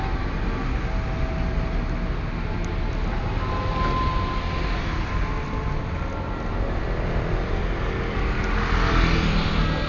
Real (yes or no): yes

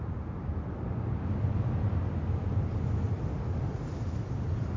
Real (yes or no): yes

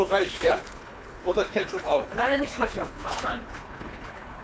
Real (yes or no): no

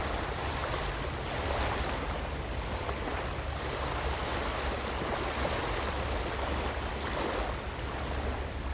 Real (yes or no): yes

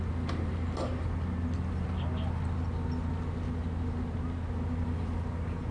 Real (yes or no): yes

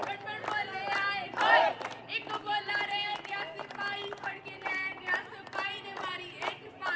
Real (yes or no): yes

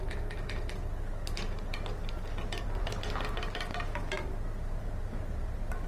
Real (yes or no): yes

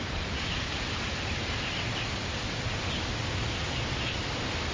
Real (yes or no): yes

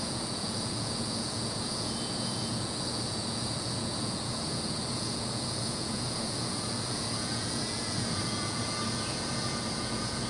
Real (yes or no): no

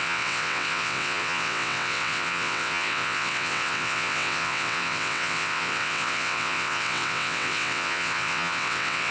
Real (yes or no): no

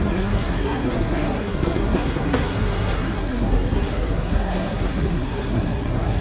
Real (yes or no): no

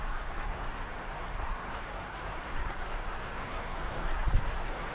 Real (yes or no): no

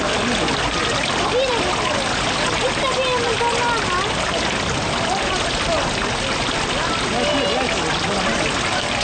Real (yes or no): yes